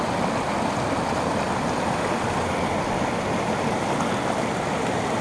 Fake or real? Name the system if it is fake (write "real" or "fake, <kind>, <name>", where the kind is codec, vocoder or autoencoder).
real